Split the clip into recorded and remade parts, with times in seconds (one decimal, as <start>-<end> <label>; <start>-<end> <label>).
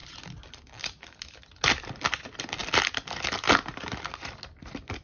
0.0-5.0 recorded